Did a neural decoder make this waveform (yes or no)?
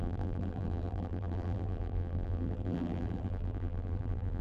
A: yes